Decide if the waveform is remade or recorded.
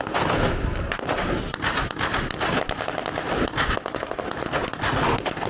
recorded